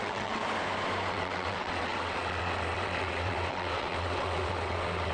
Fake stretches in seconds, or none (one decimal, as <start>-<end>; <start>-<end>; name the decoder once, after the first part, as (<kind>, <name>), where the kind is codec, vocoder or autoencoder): 0.0-0.4 (vocoder, WaveNeXt); 1.1-5.1

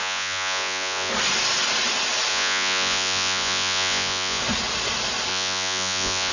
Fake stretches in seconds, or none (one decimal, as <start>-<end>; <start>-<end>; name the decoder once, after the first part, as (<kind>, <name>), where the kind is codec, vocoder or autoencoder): 0.0-1.1 (vocoder, Vocos); 2.3-4.4; 5.3-6.3

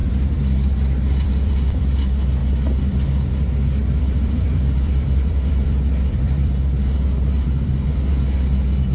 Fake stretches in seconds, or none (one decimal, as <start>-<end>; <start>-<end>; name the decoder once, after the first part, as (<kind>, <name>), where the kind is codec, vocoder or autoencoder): 0.0-1.8 (vocoder, BigVGAN v2); 2.4-3.3; 3.8-6.5

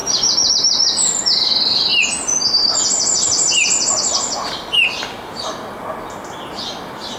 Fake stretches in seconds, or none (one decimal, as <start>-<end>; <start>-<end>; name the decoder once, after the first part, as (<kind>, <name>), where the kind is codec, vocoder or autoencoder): none

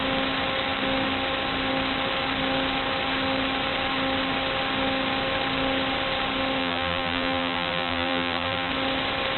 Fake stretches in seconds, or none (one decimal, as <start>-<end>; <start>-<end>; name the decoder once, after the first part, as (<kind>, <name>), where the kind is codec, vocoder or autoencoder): 6.6-8.7 (vocoder, BigVGAN v2)

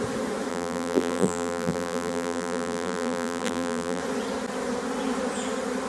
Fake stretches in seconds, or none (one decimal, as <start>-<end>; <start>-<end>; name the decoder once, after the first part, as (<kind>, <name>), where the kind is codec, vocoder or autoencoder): 0.5-4.0 (vocoder, BigVGAN v2)

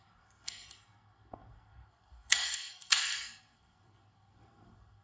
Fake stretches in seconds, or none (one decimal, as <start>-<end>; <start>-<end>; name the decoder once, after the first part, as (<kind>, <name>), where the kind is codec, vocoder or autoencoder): 0.0-5.0 (codec, SNAC)

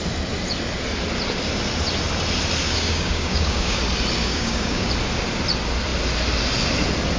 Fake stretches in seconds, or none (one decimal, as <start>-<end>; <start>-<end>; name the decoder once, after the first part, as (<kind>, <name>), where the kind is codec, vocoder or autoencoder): 2.6-3.8 (codec, DAC); 4.2-4.9